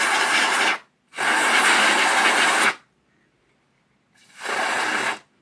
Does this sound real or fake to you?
real